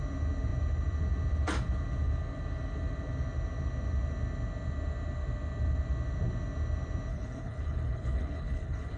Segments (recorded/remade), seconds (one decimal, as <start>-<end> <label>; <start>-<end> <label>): 0.0-7.1 recorded; 7.1-9.0 remade